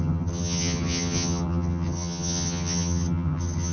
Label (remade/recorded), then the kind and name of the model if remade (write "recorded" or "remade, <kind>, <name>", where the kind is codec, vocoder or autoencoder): remade, vocoder, HiFi-GAN